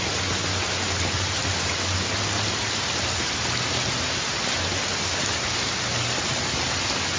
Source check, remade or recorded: recorded